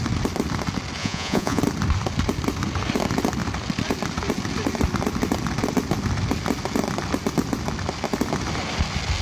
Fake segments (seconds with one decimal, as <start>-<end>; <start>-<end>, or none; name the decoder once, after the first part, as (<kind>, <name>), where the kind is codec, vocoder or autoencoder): 1.0-1.6 (vocoder, Vocos)